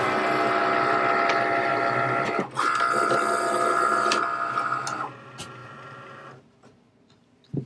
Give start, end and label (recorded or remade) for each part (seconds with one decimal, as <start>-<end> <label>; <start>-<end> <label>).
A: 0.0-7.7 recorded